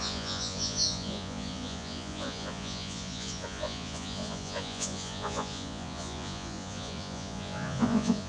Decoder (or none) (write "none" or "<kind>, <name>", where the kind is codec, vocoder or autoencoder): vocoder, Vocos